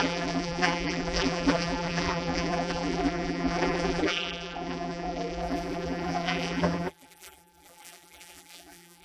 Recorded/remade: remade